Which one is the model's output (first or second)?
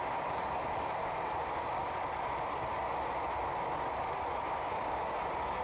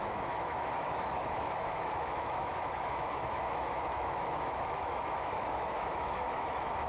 second